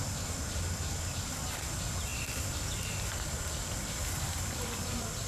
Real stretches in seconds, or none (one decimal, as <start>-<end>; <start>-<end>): 0.0-5.3